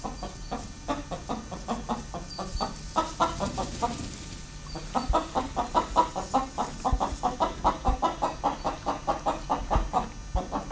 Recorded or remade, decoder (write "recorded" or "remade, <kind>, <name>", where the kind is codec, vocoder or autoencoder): recorded